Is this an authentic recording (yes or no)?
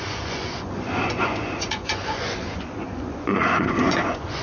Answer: no